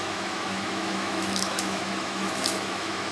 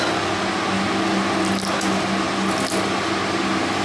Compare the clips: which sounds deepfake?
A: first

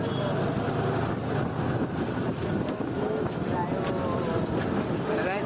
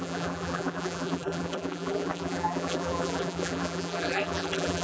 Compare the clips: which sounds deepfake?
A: second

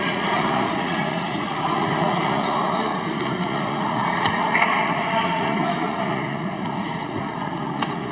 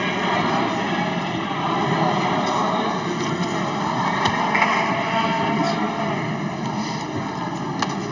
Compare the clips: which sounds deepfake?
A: first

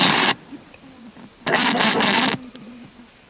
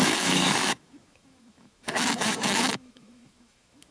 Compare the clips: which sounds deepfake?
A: second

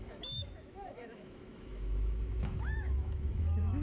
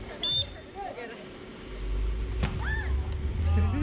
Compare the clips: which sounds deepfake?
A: first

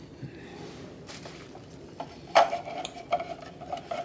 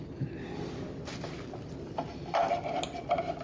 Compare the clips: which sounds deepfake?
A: first